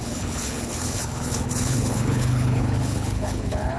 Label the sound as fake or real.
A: fake